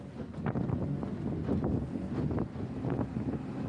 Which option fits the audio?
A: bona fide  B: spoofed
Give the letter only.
A